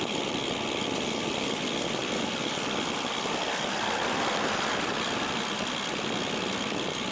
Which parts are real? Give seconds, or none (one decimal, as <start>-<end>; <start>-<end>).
0.0-2.0; 3.1-7.1